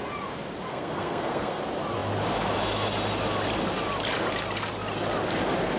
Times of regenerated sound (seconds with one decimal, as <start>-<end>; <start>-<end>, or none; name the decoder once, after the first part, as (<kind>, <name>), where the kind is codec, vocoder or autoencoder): 0.7-1.6 (codec, SNAC)